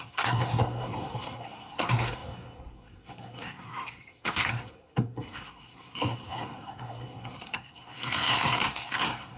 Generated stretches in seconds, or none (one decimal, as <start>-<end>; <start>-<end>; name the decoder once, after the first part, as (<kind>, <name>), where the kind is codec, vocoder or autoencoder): 0.0-9.4 (codec, SNAC)